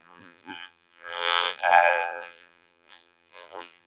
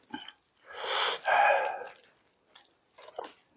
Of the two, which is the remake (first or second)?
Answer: first